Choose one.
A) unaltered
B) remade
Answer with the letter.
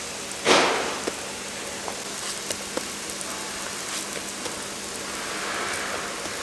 A